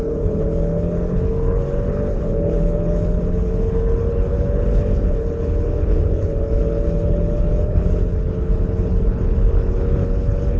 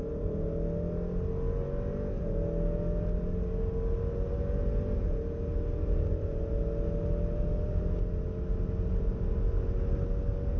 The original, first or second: second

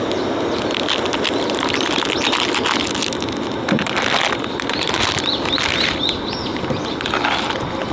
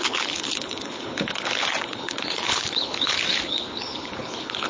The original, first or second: first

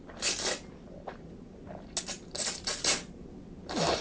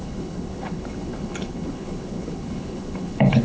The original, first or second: first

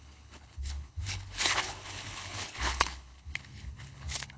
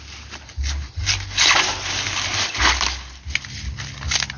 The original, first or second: second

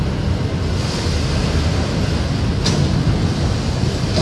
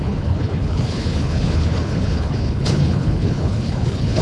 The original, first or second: first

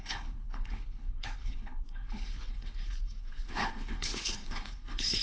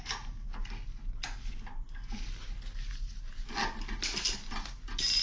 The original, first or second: second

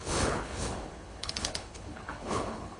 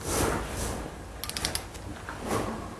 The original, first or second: second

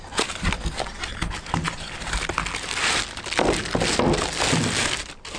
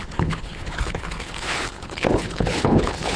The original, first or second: first